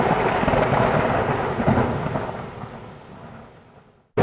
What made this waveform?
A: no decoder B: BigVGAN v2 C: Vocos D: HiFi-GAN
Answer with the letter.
A